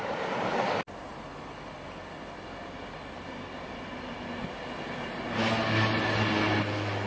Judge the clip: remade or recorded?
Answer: recorded